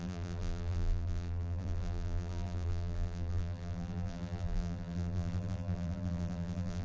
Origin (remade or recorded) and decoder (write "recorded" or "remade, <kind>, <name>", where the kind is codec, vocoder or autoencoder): remade, vocoder, BigVGAN v2